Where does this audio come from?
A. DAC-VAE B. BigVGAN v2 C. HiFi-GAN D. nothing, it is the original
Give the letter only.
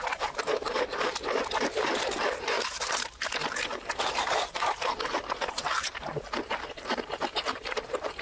B